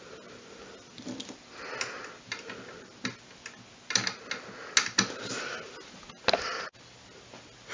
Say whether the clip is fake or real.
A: real